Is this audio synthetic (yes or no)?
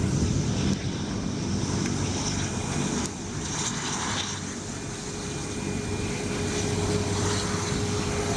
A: no